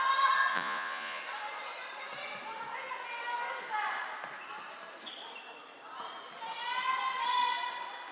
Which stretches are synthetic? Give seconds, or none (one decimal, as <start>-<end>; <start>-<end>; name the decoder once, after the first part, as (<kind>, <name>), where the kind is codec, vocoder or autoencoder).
0.5-1.2 (vocoder, Vocos)